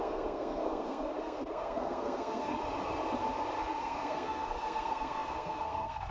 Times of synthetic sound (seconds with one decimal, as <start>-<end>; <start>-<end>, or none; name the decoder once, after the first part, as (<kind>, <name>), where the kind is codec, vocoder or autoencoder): 0.0-2.5 (codec, SNAC); 3.8-6.1